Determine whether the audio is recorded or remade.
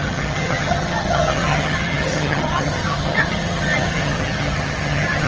remade